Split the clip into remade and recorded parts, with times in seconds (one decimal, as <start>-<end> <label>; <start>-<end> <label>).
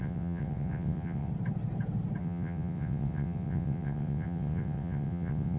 0.0-1.3 remade; 1.3-2.2 recorded; 2.2-5.6 remade